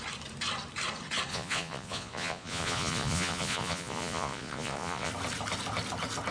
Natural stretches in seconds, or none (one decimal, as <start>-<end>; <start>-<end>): 0.0-1.3; 5.1-6.3